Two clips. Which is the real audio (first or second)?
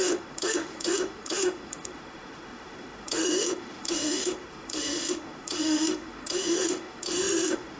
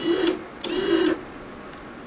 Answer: second